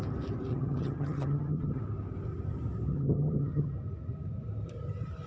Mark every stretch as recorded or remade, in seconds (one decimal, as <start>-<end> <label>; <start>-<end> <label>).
0.0-0.5 recorded; 0.5-1.8 remade; 1.8-2.9 recorded; 2.9-3.7 remade; 3.7-5.3 recorded